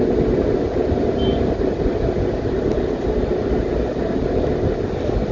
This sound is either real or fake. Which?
real